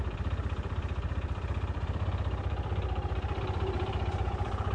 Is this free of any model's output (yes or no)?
no